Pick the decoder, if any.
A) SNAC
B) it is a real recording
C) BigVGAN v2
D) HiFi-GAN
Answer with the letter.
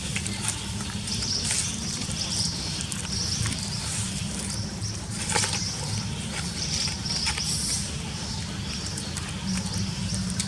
B